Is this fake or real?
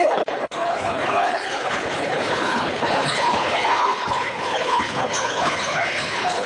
fake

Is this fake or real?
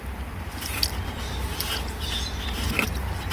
fake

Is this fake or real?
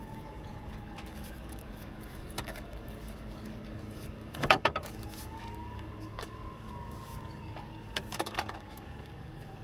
fake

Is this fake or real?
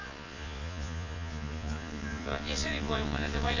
fake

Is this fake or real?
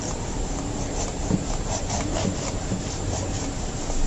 fake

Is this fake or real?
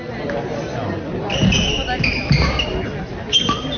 real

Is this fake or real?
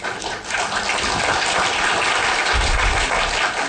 real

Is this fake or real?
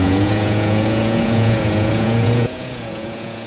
fake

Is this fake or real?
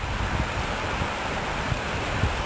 real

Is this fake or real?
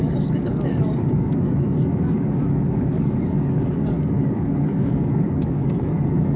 fake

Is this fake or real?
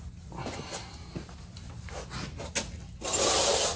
real